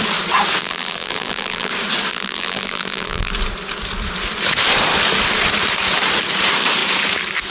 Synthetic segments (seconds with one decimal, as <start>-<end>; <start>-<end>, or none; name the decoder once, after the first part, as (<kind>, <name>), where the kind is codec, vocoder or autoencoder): 0.6-1.7 (vocoder, BigVGAN v2); 2.1-3.3